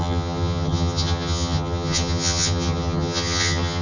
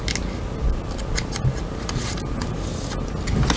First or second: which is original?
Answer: second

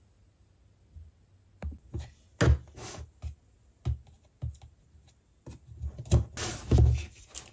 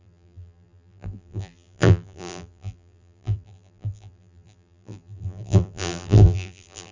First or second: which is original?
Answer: first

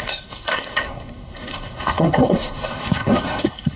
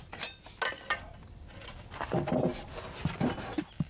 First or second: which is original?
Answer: second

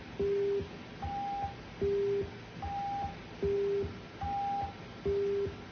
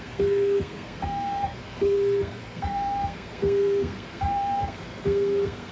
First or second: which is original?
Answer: first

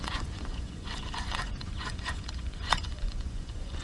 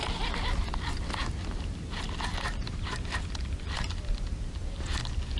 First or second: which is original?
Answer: second